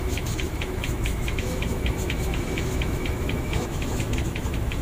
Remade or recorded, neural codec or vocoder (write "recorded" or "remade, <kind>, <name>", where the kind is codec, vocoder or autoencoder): remade, autoencoder, DAC-VAE